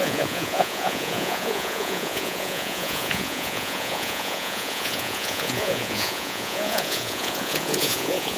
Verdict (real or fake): fake